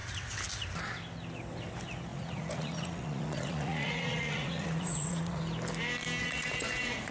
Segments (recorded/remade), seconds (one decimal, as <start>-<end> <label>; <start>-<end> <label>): 0.0-2.1 recorded; 2.1-5.4 remade; 5.4-6.2 recorded; 6.2-7.1 remade